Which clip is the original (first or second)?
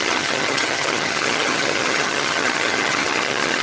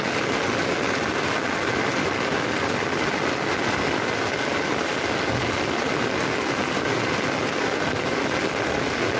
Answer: second